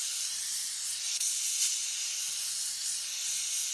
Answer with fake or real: real